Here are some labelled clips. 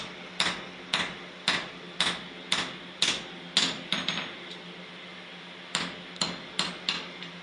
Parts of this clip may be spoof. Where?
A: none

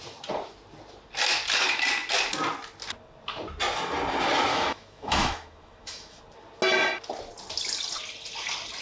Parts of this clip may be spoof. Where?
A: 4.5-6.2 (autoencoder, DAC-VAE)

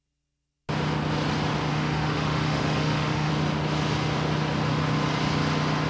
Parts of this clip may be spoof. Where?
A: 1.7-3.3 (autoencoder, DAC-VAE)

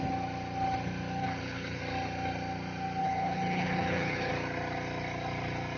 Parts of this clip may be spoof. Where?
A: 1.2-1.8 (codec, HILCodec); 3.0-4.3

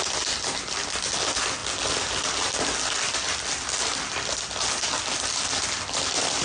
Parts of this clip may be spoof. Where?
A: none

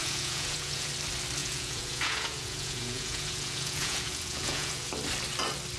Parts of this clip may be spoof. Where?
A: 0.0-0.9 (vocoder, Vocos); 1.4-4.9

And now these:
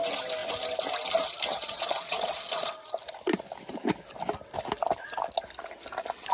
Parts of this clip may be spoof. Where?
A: 1.5-2.7 (vocoder, Vocos)

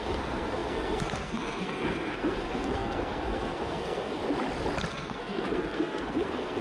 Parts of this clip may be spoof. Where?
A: 0.0-4.2 (codec, SNAC); 4.9-6.6